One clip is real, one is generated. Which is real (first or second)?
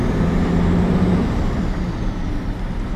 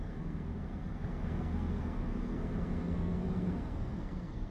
first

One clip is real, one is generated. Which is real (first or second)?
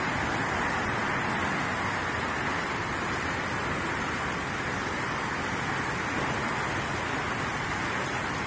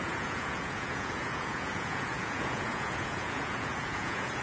first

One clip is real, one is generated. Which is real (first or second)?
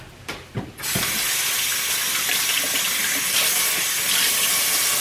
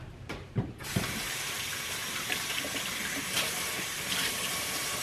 first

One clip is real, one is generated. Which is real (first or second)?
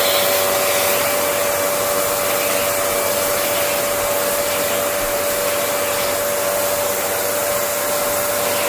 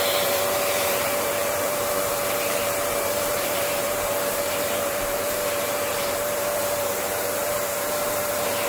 first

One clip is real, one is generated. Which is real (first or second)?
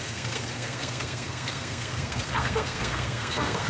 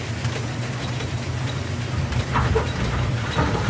second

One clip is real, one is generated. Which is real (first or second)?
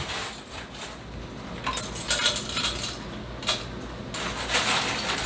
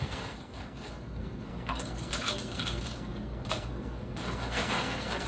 first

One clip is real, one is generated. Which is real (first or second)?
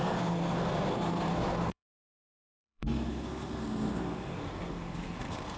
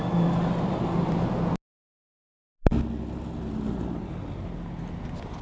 second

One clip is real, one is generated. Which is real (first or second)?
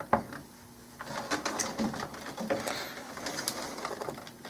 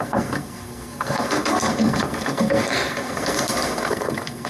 first